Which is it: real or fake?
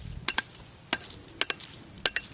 real